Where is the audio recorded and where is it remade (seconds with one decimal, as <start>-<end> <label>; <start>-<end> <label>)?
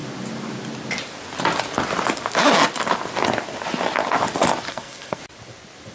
0.0-4.7 recorded; 4.7-5.2 remade; 5.2-5.9 recorded